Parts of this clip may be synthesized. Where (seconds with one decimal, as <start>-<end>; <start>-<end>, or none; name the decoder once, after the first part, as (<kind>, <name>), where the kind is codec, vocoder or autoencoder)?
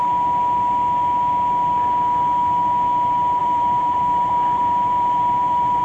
3.4-5.8 (vocoder, BigVGAN v2)